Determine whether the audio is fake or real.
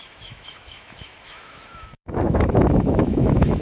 fake